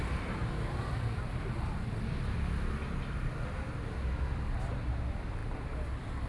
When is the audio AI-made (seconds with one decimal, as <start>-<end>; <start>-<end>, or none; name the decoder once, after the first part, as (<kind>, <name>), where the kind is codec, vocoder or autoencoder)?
none